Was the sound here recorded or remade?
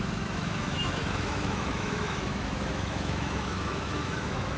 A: remade